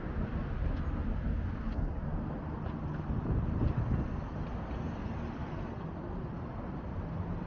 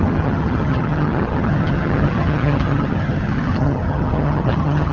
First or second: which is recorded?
first